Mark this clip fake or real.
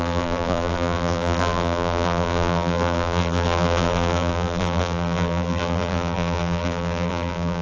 fake